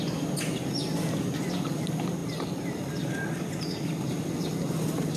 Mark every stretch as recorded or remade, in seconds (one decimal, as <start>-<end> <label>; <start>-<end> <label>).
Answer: 0.0-5.2 recorded